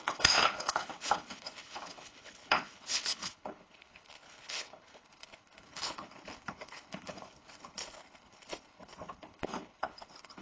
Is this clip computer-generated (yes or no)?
yes